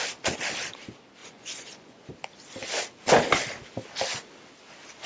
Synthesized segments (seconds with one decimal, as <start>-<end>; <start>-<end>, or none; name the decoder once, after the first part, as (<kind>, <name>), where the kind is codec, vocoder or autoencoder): 1.2-2.1 (vocoder, Vocos)